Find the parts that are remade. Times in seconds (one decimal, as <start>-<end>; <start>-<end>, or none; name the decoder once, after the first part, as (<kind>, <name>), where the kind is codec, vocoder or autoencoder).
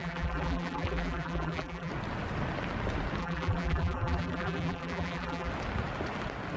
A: 0.0-1.9 (vocoder, BigVGAN v2); 3.2-5.5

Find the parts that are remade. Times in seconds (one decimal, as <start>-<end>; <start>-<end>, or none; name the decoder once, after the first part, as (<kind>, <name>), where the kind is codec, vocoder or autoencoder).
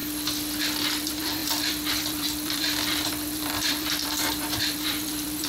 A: 0.6-5.5 (vocoder, BigVGAN v2)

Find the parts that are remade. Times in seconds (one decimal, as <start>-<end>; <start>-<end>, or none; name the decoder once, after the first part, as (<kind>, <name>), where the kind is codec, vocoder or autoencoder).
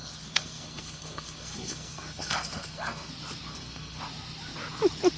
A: 0.0-3.1 (codec, SNAC); 3.5-4.0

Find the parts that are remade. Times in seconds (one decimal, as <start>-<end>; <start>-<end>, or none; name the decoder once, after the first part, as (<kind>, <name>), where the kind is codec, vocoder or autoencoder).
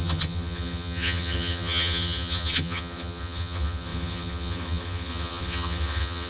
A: 0.0-6.3 (vocoder, HiFi-GAN)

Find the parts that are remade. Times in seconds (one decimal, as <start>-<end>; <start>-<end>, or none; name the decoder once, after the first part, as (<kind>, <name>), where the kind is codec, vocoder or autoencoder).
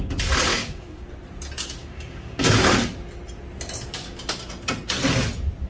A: 0.5-1.1 (codec, DAC); 1.8-2.5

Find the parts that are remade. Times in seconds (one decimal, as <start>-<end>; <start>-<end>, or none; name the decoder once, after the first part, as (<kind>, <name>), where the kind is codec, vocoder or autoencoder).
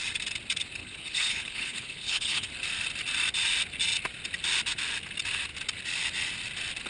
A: 0.8-2.5 (codec, HILCodec)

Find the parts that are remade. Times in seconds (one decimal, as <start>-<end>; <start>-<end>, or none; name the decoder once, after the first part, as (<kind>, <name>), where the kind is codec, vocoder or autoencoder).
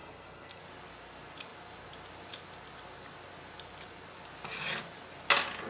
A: 0.0-0.6 (codec, SNAC)